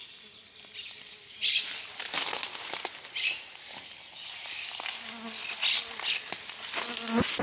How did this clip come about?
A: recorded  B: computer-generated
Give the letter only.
A